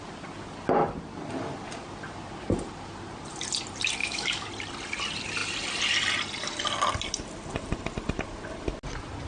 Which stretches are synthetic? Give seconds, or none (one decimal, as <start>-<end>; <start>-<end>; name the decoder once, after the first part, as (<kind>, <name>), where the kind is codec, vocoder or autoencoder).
4.0-4.5 (autoencoder, DAC-VAE)